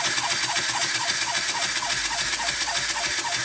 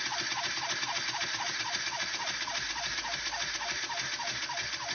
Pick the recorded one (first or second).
first